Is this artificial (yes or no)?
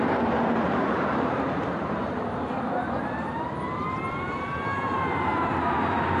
yes